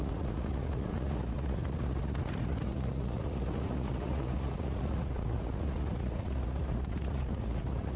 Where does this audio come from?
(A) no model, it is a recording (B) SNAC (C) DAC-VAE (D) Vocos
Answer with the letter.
D